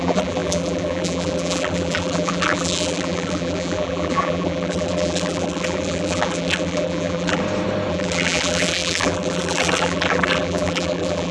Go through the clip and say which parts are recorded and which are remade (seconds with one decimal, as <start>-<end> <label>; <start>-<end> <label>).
0.0-7.4 remade; 7.4-7.9 recorded; 7.9-11.3 remade